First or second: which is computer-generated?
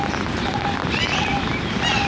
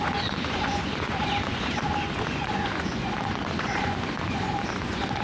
second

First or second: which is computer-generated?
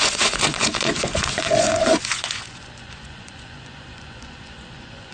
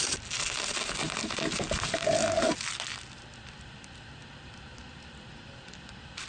first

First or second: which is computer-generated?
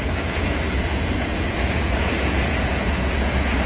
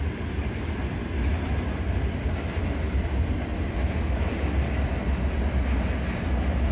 first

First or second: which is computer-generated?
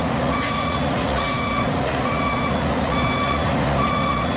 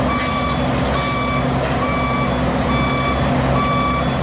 first